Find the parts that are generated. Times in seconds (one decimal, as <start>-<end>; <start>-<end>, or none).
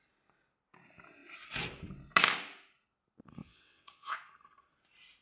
3.4-4.2